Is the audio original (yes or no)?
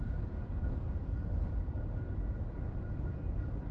yes